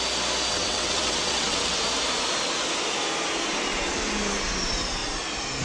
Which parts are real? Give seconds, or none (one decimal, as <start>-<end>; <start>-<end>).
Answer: 0.0-0.5; 1.8-5.6